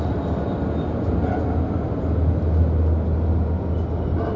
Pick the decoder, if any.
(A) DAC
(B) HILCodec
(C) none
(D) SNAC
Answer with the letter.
C